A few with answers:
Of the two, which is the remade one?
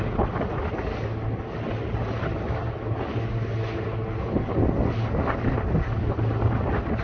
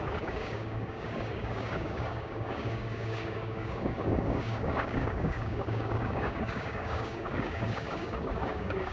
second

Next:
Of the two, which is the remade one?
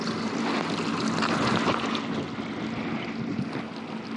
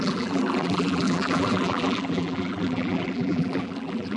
second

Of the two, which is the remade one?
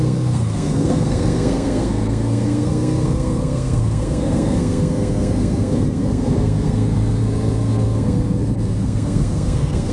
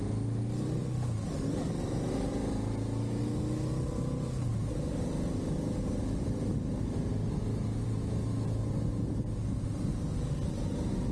first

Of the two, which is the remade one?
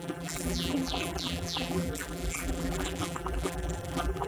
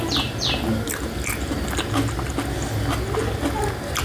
first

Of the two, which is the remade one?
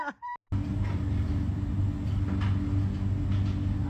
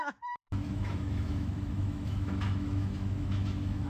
second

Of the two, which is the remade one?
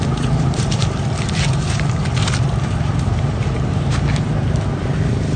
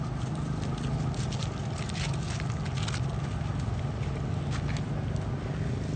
first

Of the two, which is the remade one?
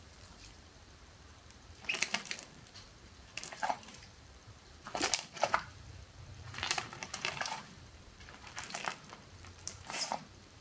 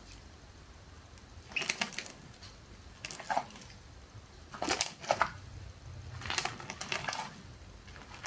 first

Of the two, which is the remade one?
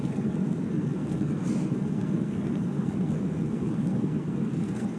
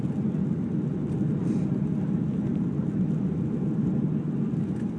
first